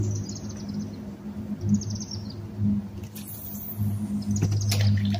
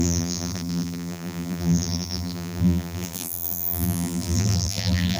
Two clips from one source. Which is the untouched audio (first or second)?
first